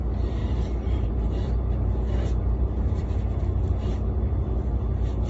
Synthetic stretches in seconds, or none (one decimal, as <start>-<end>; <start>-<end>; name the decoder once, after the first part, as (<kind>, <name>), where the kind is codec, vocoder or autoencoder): 0.4-3.2 (vocoder, BigVGAN v2)